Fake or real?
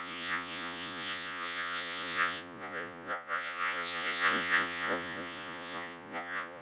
fake